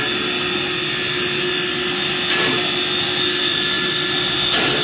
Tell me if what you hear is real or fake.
real